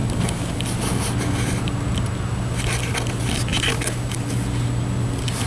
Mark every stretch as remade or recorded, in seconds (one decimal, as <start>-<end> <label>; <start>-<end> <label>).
0.0-5.5 recorded